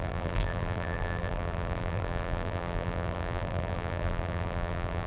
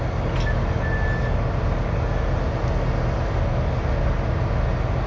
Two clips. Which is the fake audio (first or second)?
first